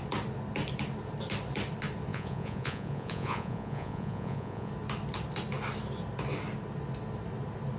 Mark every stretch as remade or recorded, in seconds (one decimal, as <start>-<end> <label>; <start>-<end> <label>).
0.0-2.1 recorded; 2.1-4.7 remade; 4.7-7.8 recorded